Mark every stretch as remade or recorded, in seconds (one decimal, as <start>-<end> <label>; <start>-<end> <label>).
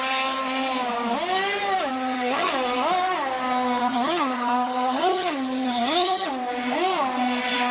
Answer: 0.0-1.9 recorded; 1.9-2.5 remade; 2.5-3.8 recorded; 3.8-6.3 remade; 6.3-7.7 recorded